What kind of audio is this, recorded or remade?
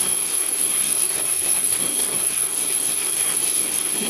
remade